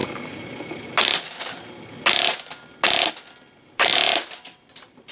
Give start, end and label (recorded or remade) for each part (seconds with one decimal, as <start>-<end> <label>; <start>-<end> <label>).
0.0-3.1 recorded; 3.1-3.9 remade; 3.9-4.6 recorded; 4.6-5.1 remade